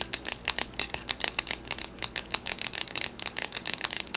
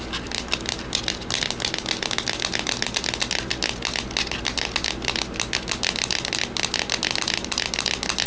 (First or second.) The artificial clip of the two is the first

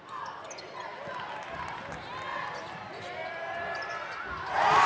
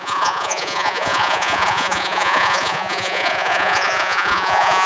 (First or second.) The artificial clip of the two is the second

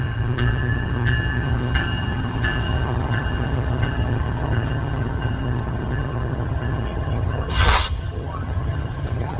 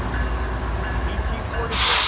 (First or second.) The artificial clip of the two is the first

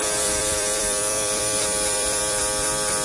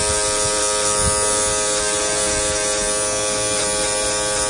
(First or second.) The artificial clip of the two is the first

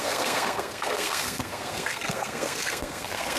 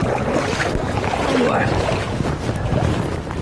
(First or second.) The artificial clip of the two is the first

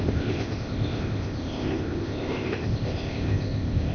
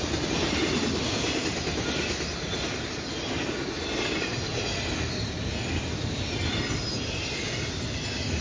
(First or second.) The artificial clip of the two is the first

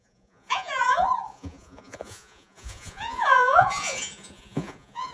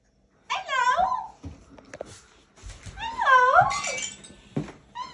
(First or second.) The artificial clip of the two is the first